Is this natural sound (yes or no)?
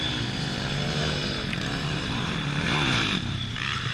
no